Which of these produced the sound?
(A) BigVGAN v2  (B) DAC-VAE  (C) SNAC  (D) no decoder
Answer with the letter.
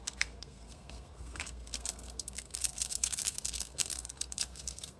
C